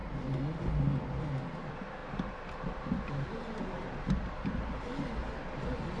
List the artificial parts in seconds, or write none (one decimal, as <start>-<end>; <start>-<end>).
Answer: 2.0-4.5